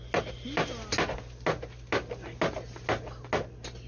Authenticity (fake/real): real